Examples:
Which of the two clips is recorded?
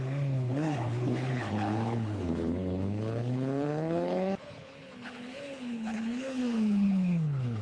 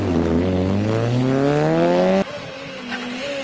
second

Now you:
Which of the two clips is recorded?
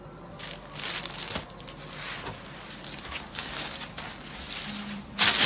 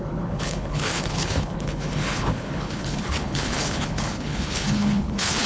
first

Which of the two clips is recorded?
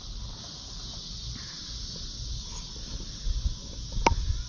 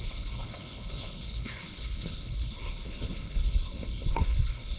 first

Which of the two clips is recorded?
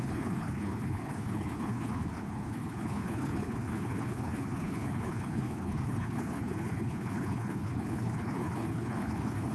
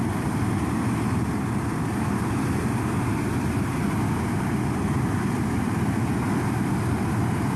second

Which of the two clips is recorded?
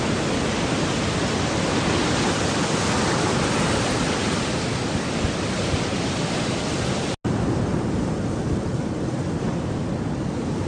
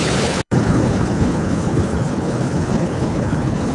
first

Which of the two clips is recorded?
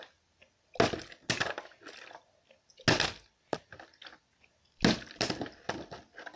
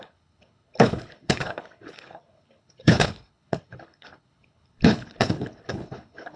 first